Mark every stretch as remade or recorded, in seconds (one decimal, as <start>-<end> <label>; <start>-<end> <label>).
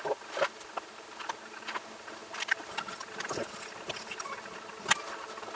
0.0-5.6 recorded